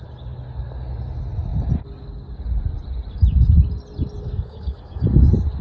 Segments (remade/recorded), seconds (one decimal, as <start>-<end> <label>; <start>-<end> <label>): 0.0-4.2 recorded; 4.2-5.0 remade; 5.0-5.6 recorded